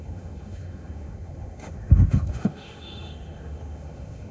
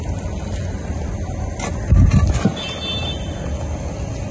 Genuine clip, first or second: second